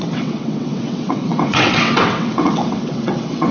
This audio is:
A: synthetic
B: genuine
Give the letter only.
A